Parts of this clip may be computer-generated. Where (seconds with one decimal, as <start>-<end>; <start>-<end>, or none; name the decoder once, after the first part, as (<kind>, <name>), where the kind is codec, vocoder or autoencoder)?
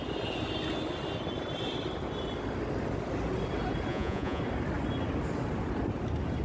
3.9-4.4 (vocoder, Vocos)